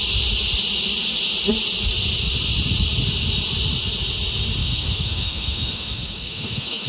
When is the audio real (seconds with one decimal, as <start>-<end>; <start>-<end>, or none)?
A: 0.0-4.6